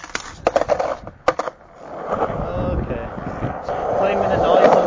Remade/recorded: recorded